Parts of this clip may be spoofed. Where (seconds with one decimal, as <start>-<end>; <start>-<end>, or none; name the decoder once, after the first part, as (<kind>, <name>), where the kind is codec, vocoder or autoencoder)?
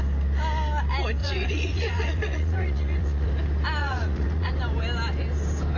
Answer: 1.2-3.3 (vocoder, Vocos); 3.8-4.5